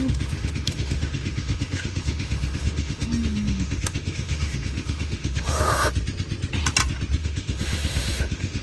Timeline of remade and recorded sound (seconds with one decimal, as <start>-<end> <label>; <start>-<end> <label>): 0.0-5.9 remade; 5.9-7.2 recorded; 7.2-8.6 remade